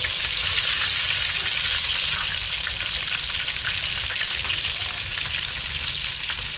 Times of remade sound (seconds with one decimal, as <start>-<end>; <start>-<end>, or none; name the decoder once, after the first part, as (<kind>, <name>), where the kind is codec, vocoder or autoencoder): none